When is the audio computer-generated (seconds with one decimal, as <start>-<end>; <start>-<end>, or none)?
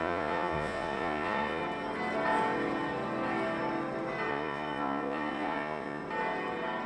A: 0.0-1.6; 4.3-6.0